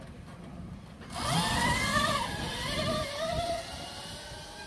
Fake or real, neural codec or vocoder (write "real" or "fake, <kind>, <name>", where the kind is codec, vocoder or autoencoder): real